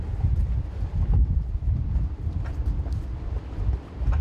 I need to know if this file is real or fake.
real